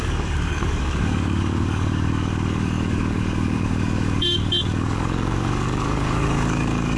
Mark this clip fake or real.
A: fake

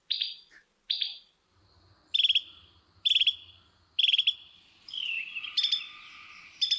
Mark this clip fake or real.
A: real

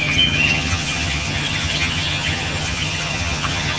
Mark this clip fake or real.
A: fake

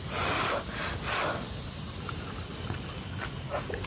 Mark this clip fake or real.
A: real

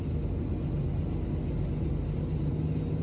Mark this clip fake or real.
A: real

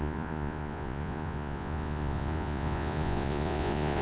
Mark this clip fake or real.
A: fake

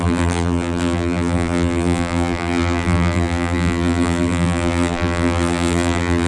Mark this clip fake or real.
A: fake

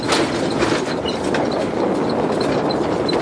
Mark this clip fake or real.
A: real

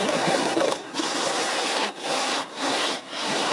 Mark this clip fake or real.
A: fake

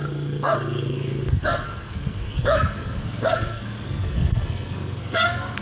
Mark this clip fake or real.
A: fake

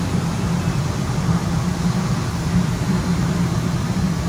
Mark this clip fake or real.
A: fake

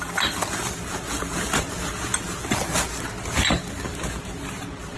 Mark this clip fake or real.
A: real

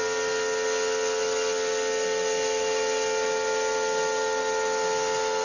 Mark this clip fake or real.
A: real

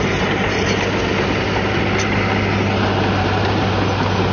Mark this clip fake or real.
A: real